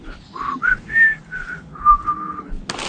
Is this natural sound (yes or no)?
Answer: yes